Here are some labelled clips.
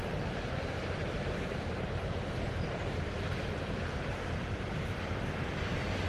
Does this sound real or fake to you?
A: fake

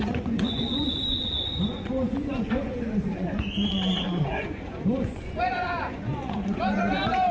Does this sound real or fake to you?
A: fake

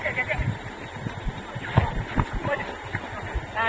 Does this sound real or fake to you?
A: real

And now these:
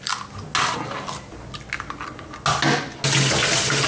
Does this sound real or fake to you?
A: real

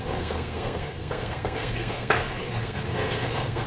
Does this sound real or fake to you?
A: fake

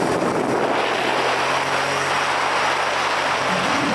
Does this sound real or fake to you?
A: real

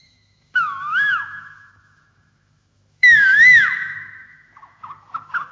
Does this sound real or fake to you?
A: fake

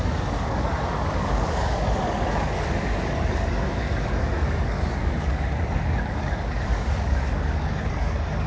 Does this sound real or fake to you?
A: fake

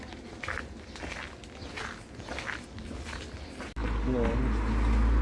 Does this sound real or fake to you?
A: real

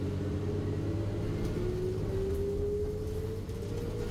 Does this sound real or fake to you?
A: real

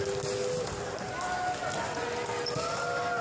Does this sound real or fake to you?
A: real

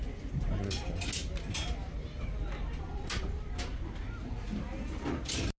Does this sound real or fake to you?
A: real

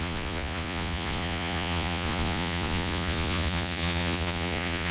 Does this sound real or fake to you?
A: fake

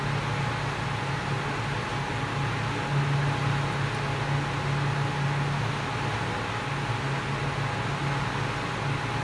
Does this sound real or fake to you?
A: real